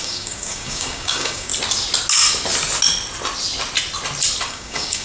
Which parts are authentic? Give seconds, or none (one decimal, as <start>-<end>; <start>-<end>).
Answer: 1.5-4.5

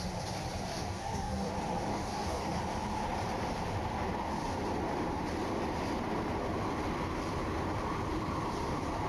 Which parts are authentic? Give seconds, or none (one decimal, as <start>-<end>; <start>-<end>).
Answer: 0.0-0.7; 1.5-1.9; 2.6-9.1

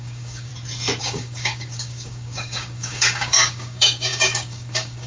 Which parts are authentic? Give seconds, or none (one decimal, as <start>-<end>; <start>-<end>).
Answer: 0.5-1.0

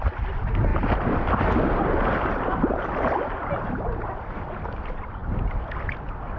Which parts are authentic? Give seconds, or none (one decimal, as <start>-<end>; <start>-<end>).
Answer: 0.0-6.4

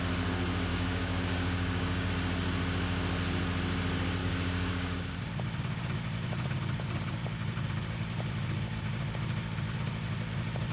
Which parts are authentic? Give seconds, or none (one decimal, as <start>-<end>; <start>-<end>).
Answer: 0.0-0.7; 2.1-4.2; 5.1-10.7

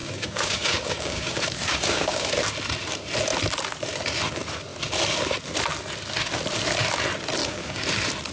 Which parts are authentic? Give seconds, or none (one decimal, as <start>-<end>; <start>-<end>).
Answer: 2.3-7.4; 7.9-8.3

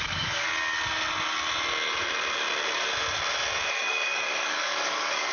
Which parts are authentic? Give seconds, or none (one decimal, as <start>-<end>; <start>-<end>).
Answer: 0.5-3.7